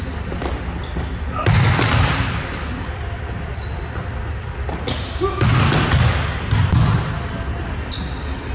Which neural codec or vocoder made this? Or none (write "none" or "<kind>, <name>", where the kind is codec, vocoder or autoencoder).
none